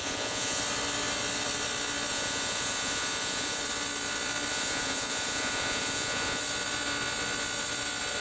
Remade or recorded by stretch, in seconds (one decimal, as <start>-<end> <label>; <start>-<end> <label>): 0.0-0.6 remade; 0.6-2.1 recorded; 2.1-3.6 remade; 3.6-4.5 recorded; 4.5-6.4 remade; 6.4-8.2 recorded